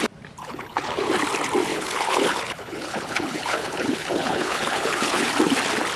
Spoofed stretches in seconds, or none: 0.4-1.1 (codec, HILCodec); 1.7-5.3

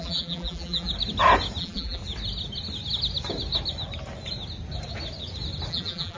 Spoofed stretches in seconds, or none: 0.0-0.9 (vocoder, BigVGAN v2); 1.6-2.0; 5.7-6.2

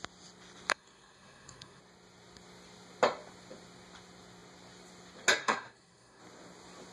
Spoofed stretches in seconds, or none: 0.7-1.8 (codec, SNAC); 5.4-6.2

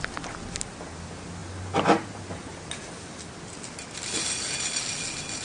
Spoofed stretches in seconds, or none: none

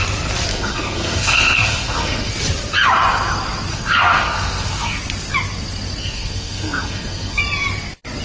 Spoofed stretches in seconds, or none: 0.5-2.3 (codec, SNAC); 3.7-5.0; 6.0-7.4

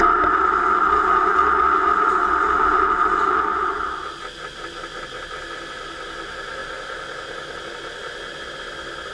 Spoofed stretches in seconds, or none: none

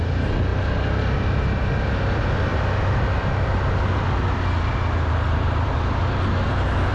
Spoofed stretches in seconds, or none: none